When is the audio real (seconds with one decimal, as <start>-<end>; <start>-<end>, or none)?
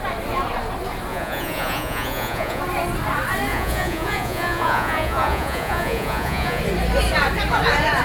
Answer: 0.0-1.1; 2.6-3.5; 6.6-8.0